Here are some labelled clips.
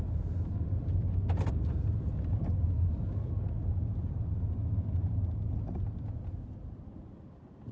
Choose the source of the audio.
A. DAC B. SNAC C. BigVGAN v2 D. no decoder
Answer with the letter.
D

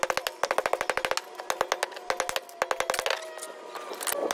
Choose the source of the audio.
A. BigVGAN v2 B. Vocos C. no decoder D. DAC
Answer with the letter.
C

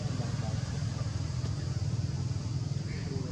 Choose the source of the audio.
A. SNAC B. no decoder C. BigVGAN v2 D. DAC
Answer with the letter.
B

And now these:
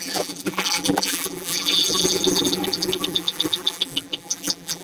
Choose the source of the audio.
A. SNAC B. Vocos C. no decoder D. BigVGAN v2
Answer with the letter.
D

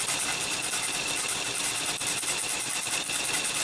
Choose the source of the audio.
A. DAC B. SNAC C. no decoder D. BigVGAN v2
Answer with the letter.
C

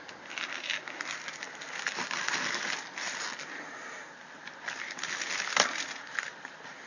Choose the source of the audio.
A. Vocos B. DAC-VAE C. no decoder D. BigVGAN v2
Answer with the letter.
C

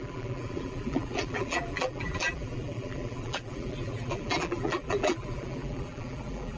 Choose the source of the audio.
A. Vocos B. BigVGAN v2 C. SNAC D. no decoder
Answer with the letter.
B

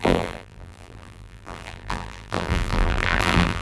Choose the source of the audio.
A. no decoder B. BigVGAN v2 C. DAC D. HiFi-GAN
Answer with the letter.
B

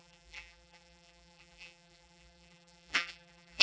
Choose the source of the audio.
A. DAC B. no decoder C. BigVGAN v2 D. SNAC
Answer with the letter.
C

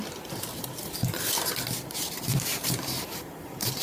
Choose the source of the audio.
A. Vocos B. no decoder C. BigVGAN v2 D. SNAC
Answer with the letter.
C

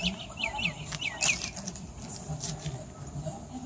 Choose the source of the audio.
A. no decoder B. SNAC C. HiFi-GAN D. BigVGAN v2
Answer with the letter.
A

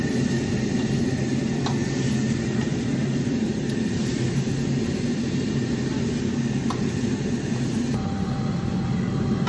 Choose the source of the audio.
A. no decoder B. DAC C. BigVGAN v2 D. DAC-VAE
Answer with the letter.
C